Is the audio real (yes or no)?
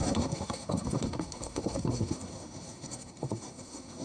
no